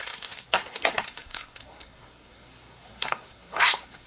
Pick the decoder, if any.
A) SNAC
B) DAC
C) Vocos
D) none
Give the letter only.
A